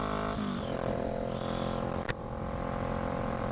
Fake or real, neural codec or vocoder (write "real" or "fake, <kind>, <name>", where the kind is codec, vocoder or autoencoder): real